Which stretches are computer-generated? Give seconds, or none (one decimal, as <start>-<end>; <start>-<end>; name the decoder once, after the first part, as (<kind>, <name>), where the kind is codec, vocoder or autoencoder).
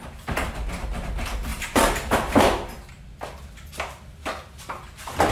1.5-2.9 (vocoder, BigVGAN v2)